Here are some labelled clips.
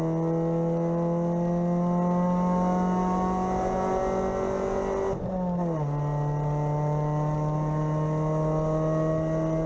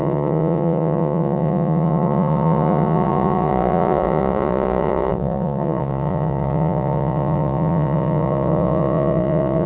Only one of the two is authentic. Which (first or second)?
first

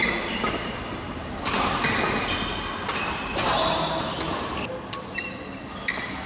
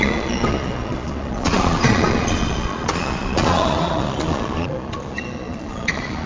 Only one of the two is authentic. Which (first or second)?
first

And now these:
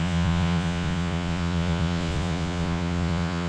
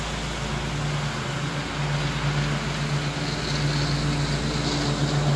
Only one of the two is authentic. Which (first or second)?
second